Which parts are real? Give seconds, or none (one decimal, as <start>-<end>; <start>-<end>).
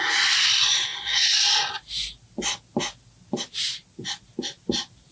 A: 0.0-5.1